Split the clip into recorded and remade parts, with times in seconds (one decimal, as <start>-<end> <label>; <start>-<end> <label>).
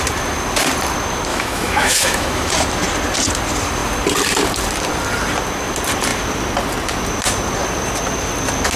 0.0-1.3 recorded; 1.3-2.5 remade; 2.5-8.8 recorded